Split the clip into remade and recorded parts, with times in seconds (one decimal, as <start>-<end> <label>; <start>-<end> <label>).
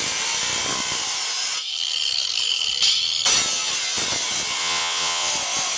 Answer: 0.0-4.6 recorded; 4.6-5.3 remade; 5.3-5.8 recorded